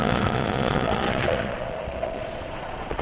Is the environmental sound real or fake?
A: fake